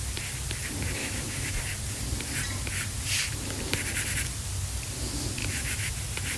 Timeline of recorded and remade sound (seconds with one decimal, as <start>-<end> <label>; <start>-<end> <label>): 0.0-1.0 recorded; 1.0-1.6 remade; 1.6-5.4 recorded; 5.4-5.9 remade; 5.9-6.4 recorded